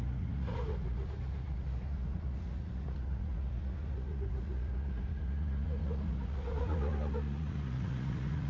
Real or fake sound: fake